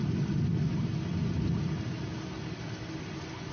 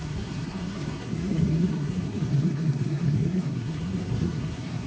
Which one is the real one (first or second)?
first